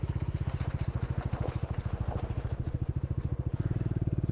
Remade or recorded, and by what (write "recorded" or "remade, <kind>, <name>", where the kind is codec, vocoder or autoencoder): remade, vocoder, BigVGAN v2